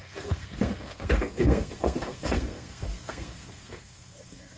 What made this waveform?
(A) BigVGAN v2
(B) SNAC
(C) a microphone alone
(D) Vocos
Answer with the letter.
B